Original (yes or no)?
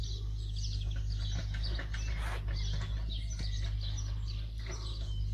yes